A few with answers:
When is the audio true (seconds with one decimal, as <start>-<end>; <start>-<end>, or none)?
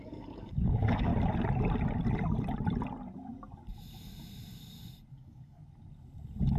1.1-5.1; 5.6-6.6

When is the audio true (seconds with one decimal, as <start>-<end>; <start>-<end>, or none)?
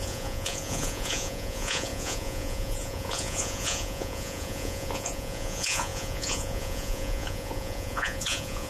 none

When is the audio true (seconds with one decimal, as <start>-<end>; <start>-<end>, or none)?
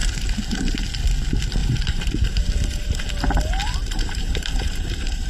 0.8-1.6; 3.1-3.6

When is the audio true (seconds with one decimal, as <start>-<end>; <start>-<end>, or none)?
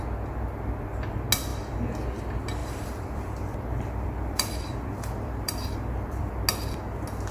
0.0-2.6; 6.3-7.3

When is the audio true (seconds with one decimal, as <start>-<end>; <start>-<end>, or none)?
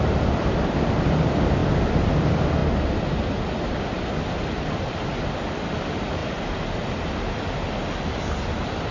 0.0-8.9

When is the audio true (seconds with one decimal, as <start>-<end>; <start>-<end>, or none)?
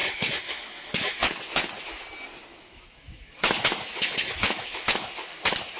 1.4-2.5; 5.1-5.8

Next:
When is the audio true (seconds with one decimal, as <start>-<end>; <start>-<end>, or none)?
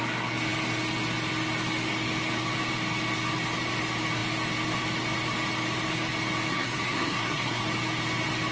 0.0-6.5; 7.6-8.5